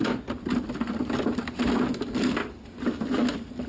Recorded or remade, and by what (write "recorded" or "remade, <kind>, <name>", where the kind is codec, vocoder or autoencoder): recorded